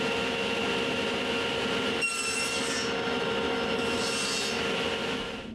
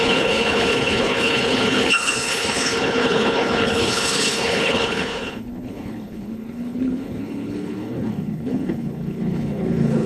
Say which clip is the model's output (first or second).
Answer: second